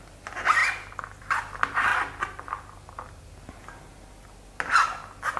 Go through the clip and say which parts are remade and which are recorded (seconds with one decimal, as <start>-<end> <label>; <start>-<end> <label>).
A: 0.0-5.4 recorded